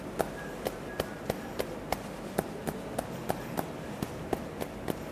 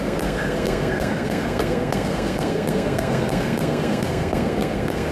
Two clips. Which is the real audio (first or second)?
first